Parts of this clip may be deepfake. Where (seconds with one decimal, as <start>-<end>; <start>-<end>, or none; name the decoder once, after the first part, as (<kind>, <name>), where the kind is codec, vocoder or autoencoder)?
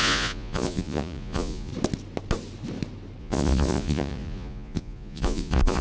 0.0-1.7 (vocoder, Vocos); 3.2-5.8